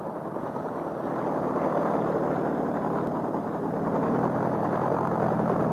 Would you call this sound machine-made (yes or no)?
no